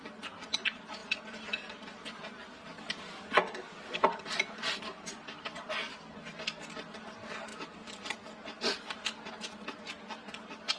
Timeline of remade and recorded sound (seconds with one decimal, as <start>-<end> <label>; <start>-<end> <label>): 0.0-10.8 recorded